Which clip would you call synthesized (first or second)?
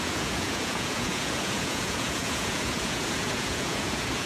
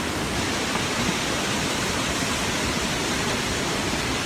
first